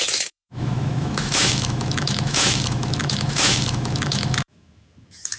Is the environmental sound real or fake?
fake